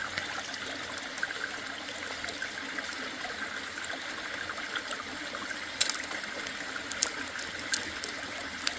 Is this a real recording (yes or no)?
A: yes